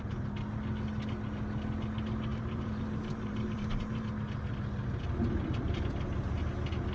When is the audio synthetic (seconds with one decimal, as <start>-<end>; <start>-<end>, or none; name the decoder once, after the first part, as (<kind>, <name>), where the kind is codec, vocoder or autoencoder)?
2.3-4.1 (vocoder, BigVGAN v2)

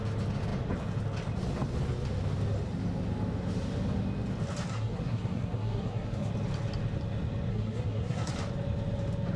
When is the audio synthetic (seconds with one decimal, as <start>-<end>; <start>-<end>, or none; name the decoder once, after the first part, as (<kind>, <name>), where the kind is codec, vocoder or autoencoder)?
4.7-6.3 (codec, SNAC); 7.5-8.3

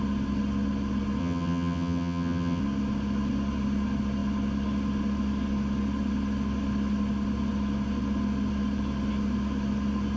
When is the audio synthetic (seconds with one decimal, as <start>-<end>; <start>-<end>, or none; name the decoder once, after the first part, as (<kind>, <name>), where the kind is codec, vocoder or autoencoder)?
1.2-2.6 (vocoder, HiFi-GAN)

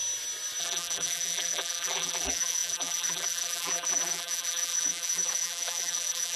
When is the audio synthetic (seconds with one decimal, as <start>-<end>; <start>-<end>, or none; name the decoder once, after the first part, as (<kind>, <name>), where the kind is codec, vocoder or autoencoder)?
0.6-6.4 (vocoder, BigVGAN v2)

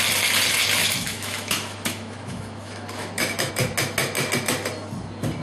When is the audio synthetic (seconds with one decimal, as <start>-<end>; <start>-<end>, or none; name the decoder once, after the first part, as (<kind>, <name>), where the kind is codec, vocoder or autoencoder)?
0.8-3.5 (autoencoder, DAC-VAE)

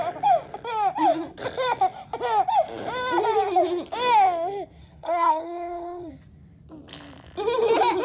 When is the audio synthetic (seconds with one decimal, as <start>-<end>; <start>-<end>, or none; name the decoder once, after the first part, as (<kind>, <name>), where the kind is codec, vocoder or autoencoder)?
4.8-6.1 (codec, SNAC)

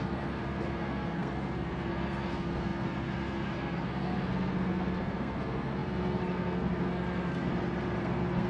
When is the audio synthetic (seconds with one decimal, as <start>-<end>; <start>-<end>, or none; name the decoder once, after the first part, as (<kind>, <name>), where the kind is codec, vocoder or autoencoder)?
0.0-7.5 (codec, SNAC); 8.0-8.5